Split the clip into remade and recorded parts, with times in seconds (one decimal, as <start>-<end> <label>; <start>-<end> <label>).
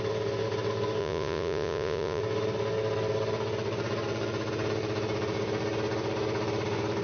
0.0-1.0 recorded; 1.0-2.2 remade; 2.2-7.0 recorded